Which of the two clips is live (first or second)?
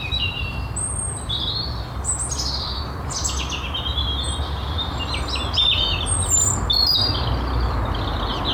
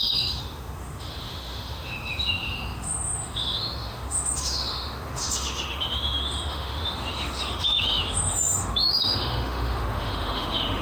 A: first